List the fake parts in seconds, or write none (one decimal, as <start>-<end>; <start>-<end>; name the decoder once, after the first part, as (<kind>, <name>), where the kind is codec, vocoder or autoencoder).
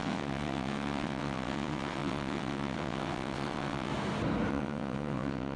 0.0-3.9 (vocoder, WaveNeXt); 4.5-5.6